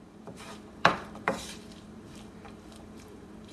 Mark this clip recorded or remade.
remade